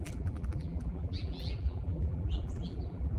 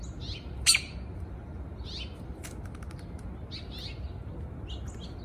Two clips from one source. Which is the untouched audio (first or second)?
second